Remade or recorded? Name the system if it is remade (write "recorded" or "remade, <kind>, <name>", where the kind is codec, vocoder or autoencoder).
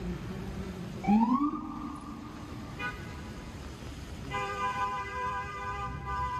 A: remade, vocoder, BigVGAN v2